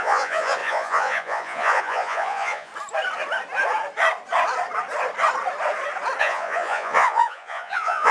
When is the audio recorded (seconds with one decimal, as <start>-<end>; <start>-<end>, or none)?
2.7-6.2